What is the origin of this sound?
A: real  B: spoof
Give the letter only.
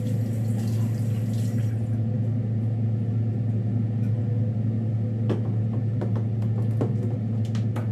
A